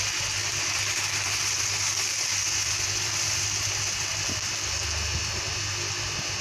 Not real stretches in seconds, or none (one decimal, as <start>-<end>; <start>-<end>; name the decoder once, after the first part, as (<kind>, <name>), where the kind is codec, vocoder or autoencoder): 0.4-4.2 (vocoder, BigVGAN v2)